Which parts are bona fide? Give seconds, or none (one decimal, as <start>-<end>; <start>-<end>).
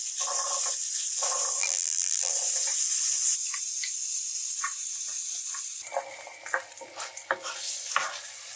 0.0-1.6; 2.3-8.6